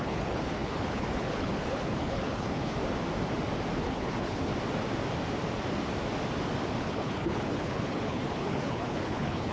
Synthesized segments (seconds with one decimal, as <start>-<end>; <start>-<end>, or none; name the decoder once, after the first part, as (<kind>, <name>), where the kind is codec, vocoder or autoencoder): 0.0-2.8 (codec, HILCodec); 3.8-4.5; 6.8-9.5